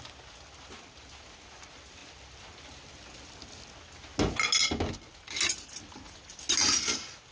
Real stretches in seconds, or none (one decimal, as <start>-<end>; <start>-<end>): 0.0-7.3